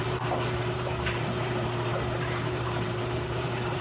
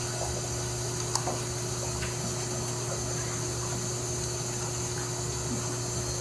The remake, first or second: first